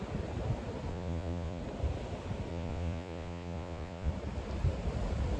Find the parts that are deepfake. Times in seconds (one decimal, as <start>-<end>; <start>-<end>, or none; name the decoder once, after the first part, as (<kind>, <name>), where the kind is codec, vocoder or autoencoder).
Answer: 0.9-1.6 (vocoder, Vocos); 2.5-4.1

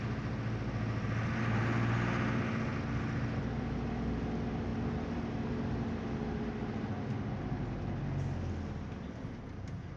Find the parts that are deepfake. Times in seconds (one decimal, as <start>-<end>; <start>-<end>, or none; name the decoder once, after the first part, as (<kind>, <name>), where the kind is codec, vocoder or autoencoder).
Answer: none